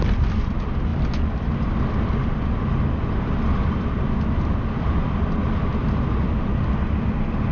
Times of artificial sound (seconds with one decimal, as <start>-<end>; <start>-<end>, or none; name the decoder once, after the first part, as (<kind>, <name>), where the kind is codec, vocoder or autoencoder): none